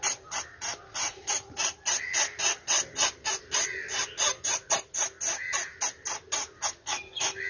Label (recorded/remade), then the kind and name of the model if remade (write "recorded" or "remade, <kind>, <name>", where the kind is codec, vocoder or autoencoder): recorded